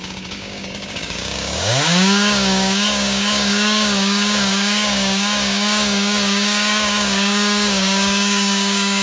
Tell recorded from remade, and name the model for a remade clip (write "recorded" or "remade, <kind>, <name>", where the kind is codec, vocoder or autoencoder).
remade, codec, DAC